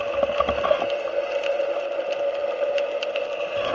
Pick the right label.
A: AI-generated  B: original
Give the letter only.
B